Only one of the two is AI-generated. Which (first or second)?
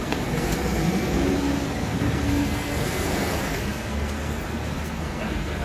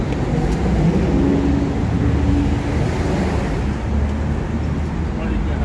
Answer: first